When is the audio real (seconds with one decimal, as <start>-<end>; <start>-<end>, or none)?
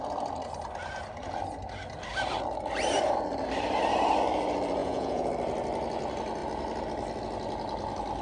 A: 0.0-4.8; 5.3-8.2